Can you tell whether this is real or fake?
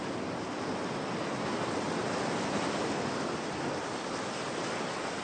real